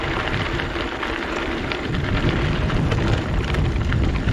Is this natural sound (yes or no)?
no